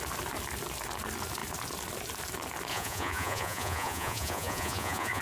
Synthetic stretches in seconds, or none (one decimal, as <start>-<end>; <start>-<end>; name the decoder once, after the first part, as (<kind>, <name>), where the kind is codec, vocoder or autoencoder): 2.7-5.2 (vocoder, Vocos)